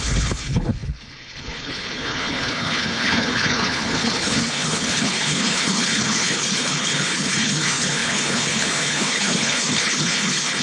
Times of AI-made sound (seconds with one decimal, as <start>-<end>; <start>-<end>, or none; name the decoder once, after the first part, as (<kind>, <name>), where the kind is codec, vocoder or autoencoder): 0.0-10.6 (codec, HILCodec)